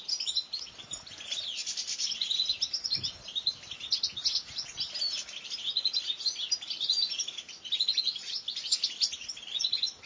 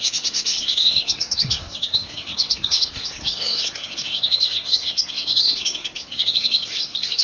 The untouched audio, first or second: first